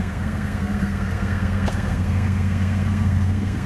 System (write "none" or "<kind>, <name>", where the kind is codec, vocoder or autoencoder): codec, SNAC